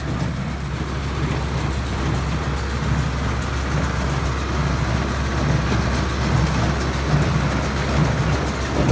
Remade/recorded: recorded